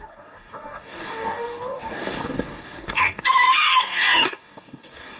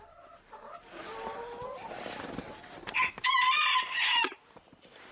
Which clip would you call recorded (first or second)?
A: second